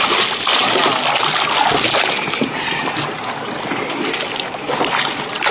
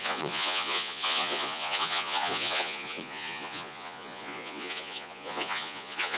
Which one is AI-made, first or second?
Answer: second